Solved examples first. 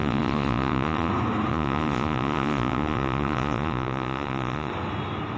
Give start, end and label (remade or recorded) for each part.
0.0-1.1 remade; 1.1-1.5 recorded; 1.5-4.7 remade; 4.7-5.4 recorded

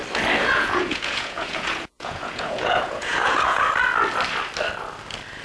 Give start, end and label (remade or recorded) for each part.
0.0-0.4 recorded; 0.4-3.6 remade; 3.6-5.4 recorded

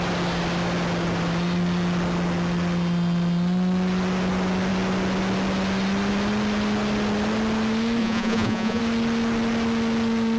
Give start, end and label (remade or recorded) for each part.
0.0-8.0 recorded; 8.0-8.8 remade; 8.8-10.4 recorded